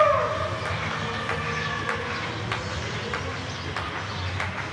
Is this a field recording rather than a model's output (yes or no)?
yes